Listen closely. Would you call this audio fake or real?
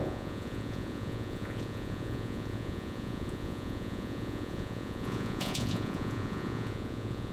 fake